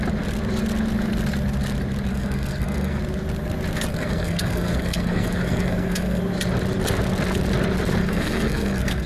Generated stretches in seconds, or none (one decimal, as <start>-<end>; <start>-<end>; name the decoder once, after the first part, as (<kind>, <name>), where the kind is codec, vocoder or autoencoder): 2.1-3.0 (codec, SNAC); 3.9-6.2; 8.0-9.1